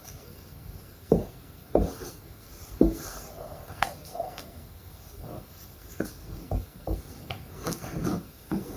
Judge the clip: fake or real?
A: fake